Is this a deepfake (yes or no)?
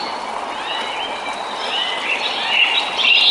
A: no